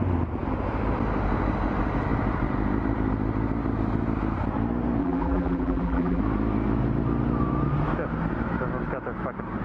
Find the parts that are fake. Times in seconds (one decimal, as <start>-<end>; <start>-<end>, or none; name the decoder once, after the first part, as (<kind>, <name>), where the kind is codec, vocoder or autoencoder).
5.0-6.2 (vocoder, BigVGAN v2)